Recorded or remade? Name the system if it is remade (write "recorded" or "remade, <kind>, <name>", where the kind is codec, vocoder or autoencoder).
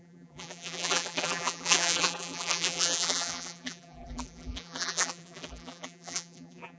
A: remade, vocoder, BigVGAN v2